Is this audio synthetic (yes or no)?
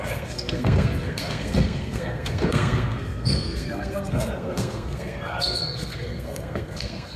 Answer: yes